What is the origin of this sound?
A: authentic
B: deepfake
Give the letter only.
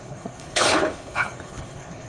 B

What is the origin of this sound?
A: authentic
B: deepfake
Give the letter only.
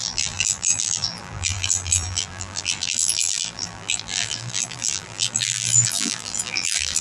B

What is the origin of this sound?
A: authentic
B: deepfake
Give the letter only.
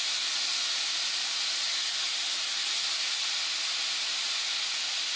A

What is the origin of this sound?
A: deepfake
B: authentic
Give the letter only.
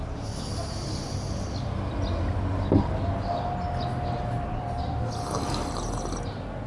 B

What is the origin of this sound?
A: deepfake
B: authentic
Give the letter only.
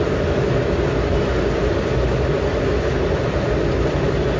B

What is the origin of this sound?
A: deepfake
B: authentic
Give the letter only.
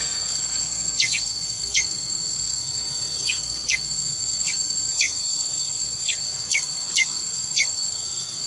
A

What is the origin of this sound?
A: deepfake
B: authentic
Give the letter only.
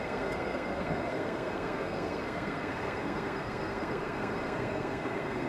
A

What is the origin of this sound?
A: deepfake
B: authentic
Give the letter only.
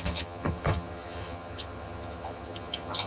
A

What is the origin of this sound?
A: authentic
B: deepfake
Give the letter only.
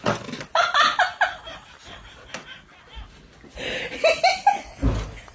A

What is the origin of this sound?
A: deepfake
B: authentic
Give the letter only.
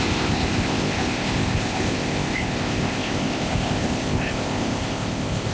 A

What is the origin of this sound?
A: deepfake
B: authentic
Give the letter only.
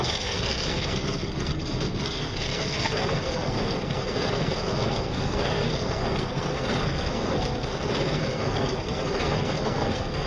A